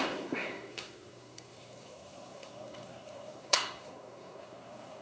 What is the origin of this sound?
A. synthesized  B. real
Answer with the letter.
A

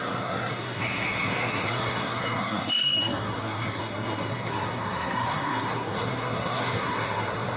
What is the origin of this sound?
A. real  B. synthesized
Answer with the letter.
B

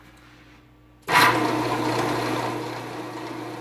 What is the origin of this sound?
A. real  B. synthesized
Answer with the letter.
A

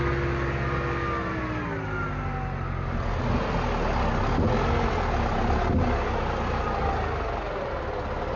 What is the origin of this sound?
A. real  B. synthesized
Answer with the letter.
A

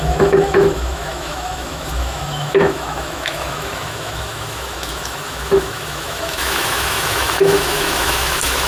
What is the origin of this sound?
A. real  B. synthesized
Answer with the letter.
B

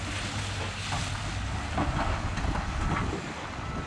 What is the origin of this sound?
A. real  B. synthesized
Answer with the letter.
A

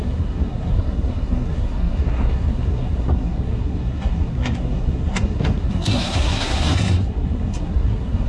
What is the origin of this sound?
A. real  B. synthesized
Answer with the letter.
B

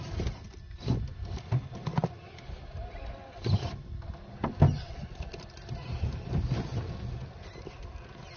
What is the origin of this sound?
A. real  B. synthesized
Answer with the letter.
A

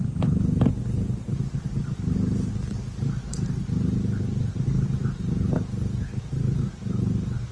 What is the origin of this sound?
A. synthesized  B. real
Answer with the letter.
B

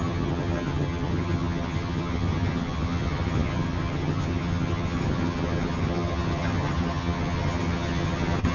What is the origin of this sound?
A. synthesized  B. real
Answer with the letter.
A